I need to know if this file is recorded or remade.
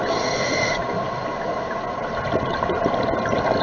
recorded